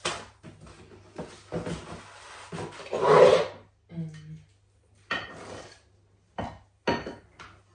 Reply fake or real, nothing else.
real